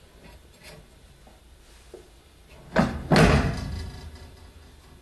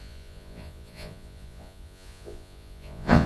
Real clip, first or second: first